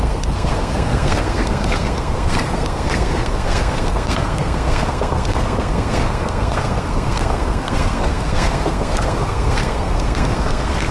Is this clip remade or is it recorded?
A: remade